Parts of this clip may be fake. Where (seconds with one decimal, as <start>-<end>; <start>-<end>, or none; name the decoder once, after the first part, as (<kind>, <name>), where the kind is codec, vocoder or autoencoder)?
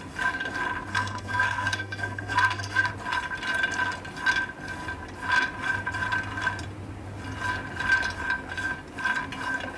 0.9-2.9 (codec, SNAC)